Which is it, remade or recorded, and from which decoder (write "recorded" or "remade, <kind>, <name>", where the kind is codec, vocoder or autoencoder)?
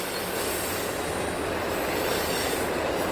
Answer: recorded